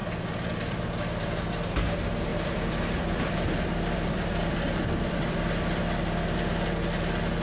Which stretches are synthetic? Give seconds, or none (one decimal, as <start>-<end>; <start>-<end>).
0.0-1.7; 2.3-5.8